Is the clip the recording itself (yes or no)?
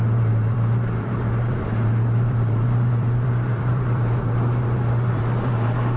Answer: no